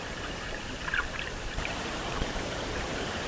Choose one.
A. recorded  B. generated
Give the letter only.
B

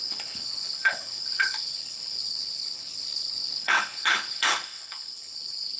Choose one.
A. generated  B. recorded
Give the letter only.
A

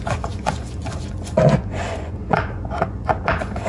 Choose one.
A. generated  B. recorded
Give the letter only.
A